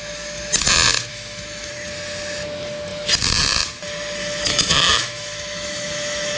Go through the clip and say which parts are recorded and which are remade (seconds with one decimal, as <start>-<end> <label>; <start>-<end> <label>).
0.0-1.1 recorded; 1.1-1.7 remade; 1.7-4.2 recorded; 4.2-6.4 remade